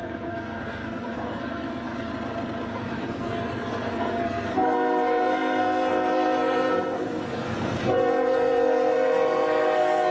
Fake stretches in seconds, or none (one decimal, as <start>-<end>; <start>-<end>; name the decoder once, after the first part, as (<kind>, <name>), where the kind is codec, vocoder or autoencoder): 0.0-2.1 (codec, SNAC); 2.7-10.1